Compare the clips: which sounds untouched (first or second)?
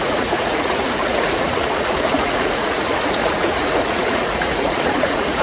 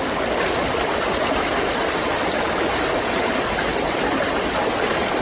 second